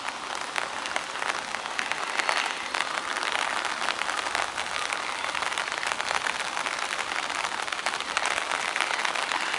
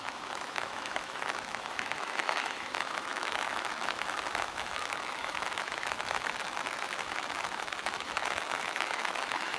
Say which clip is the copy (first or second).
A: second